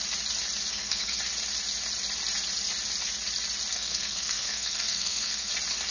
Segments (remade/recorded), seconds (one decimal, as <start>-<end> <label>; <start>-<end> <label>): 0.0-0.7 recorded; 0.7-1.2 remade; 1.2-3.7 recorded; 3.7-5.5 remade; 5.5-5.9 recorded